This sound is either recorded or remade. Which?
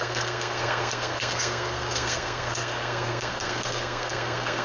remade